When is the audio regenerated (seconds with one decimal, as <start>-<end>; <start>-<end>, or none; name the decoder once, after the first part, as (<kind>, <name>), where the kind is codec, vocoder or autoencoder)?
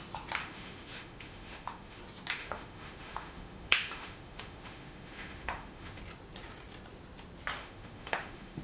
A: 0.4-2.0 (autoencoder, DAC-VAE); 2.4-6.0; 7.6-8.6